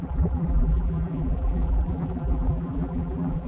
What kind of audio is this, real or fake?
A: fake